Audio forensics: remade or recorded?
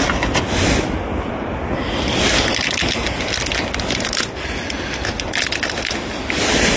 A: recorded